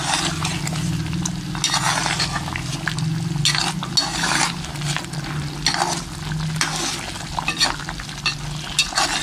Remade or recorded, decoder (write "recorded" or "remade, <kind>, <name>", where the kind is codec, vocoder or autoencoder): recorded